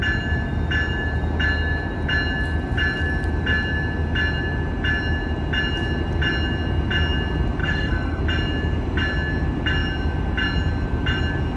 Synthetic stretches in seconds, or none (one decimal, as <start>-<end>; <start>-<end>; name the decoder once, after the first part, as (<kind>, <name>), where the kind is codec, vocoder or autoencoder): 7.6-8.2 (codec, SNAC)